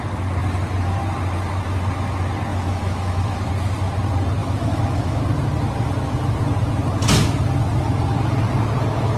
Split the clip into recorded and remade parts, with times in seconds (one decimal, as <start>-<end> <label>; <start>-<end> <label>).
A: 0.0-2.5 recorded; 2.5-3.5 remade; 3.5-4.4 recorded; 4.4-5.2 remade; 5.2-9.2 recorded